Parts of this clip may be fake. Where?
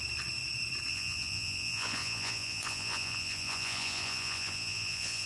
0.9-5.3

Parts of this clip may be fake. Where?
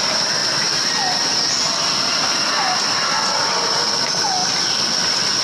none